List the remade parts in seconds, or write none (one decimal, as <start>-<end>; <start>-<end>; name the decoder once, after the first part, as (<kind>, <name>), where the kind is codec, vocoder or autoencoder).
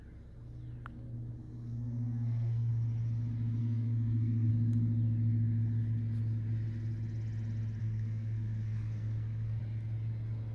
1.4-2.7 (codec, SNAC); 3.6-4.5; 7.8-9.6